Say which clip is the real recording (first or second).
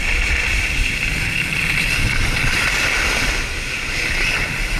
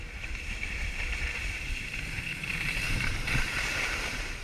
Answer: first